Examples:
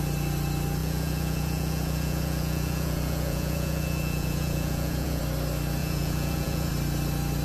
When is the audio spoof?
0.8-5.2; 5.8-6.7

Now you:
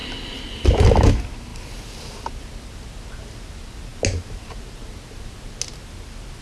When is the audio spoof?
none

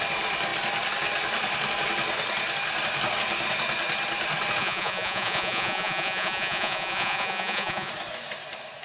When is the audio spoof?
4.6-7.9